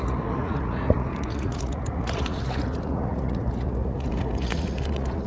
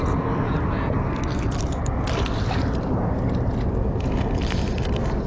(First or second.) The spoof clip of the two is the first